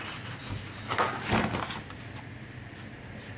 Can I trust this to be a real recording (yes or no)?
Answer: yes